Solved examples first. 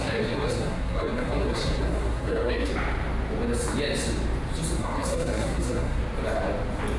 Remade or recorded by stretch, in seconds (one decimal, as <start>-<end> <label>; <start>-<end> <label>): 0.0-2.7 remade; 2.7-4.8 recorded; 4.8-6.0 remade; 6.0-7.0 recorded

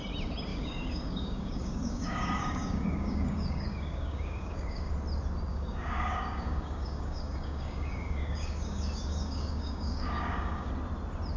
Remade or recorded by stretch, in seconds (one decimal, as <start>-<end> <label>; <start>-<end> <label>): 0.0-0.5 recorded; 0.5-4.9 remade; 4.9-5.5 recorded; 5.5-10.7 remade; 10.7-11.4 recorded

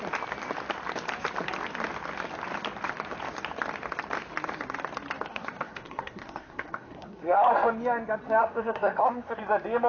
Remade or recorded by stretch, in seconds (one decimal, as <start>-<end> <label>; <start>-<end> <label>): 0.0-5.3 recorded; 5.3-7.5 remade; 7.5-8.4 recorded; 8.4-9.4 remade; 9.4-9.9 recorded

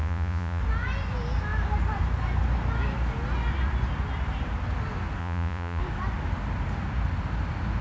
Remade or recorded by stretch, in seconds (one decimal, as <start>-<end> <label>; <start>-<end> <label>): 0.0-0.6 remade; 0.6-5.2 recorded; 5.2-5.8 remade; 5.8-7.8 recorded

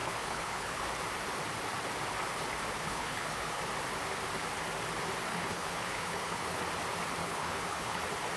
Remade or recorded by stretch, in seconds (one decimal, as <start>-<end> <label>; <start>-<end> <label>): 0.0-0.8 remade; 0.8-2.8 recorded; 2.8-3.6 remade; 3.6-5.3 recorded; 5.3-6.6 remade; 6.6-7.2 recorded; 7.2-8.0 remade; 8.0-8.4 recorded

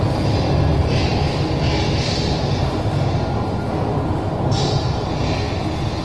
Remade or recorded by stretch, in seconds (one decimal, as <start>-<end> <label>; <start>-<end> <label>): 0.0-6.0 recorded

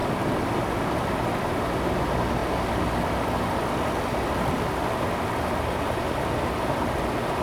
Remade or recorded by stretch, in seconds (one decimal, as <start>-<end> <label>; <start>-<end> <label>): 0.0-7.4 recorded

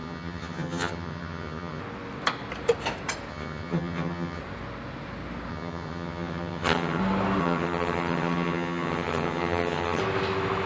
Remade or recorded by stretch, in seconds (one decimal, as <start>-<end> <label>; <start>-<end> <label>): 0.0-1.8 remade; 1.8-3.3 recorded; 3.3-4.4 remade; 4.4-5.5 recorded; 5.5-7.0 remade; 7.0-7.4 recorded; 7.4-10.0 remade; 10.0-10.7 recorded